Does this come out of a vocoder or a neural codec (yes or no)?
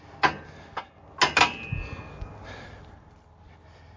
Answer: no